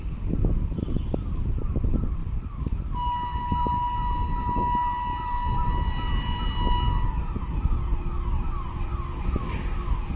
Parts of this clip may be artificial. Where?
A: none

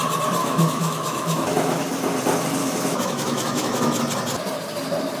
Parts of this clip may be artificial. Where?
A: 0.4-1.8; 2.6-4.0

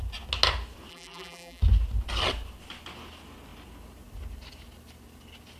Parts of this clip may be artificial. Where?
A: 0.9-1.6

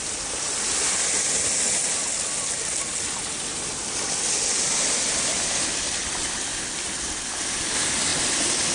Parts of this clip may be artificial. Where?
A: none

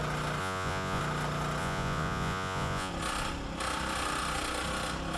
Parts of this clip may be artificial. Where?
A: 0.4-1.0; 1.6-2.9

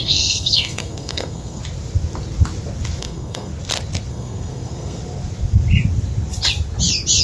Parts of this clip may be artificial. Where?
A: 0.0-1.6; 3.0-3.5; 4.1-5.0

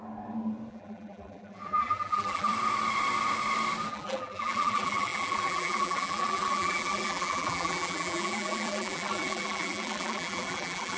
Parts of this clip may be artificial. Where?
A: 0.7-2.5; 3.9-11.0